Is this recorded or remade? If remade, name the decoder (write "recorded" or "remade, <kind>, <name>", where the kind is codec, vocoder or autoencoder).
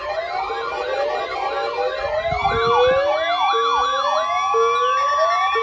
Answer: recorded